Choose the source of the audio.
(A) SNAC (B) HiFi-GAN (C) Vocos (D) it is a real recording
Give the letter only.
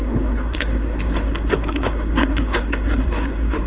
A